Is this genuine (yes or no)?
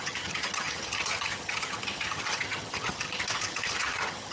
no